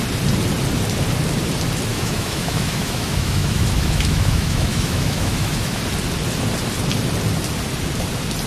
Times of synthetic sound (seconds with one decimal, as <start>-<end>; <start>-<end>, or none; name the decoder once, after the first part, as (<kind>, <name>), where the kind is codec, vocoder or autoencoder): 1.9-5.8 (autoencoder, DAC-VAE)